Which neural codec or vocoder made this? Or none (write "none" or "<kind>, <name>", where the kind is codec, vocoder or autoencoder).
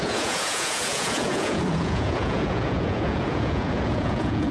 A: vocoder, Vocos